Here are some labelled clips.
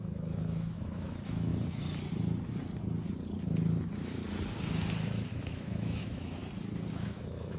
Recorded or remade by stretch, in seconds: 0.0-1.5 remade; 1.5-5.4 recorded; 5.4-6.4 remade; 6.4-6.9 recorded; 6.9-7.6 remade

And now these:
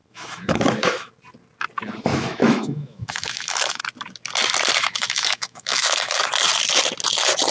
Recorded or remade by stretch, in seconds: 0.0-1.1 remade; 1.1-2.1 recorded; 2.1-3.8 remade; 3.8-4.8 recorded; 4.8-6.2 remade; 6.2-7.5 recorded

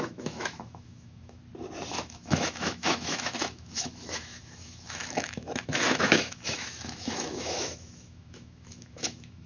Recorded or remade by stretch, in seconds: 0.0-1.4 remade; 1.4-1.9 recorded; 1.9-9.5 remade

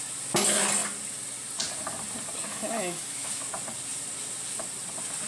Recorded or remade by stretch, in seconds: 0.0-2.5 recorded; 2.5-3.4 remade; 3.4-5.3 recorded

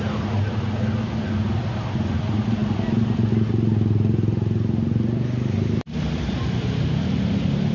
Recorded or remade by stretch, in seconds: 0.0-7.7 recorded

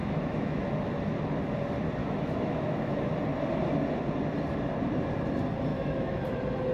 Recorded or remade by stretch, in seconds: 0.0-0.7 remade; 0.7-2.0 recorded; 2.0-3.1 remade; 3.1-5.7 recorded; 5.7-6.2 remade; 6.2-6.7 recorded

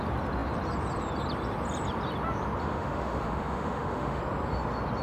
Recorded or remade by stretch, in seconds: 0.0-2.6 recorded; 2.6-4.2 remade; 4.2-5.0 recorded

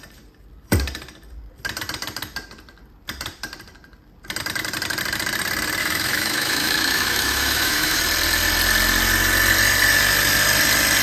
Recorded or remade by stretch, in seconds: 0.0-5.8 recorded; 5.8-8.0 remade; 8.0-11.0 recorded